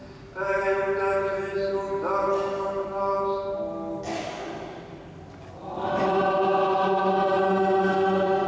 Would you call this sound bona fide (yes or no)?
yes